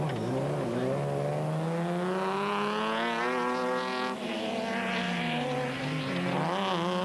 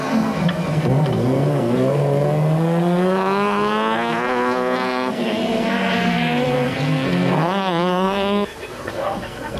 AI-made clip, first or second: second